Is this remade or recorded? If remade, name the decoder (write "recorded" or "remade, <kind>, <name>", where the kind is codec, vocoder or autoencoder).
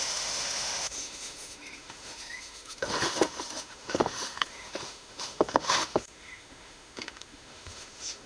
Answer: remade, autoencoder, DAC-VAE